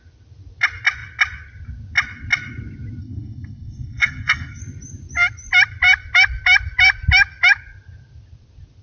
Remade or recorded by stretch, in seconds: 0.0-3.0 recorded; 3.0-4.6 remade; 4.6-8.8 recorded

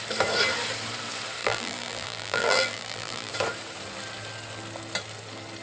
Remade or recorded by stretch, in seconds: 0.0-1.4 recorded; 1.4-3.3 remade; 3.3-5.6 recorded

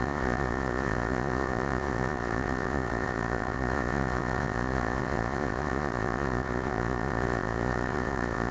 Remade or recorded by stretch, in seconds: 0.0-8.5 remade

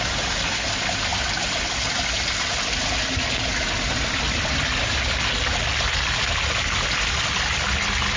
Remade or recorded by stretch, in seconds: 0.0-8.2 recorded

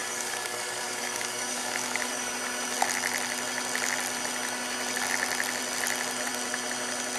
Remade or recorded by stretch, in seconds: 0.0-2.3 remade; 2.3-7.2 recorded

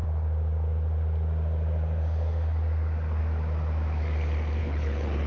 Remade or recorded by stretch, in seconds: 0.0-4.6 recorded; 4.6-5.3 remade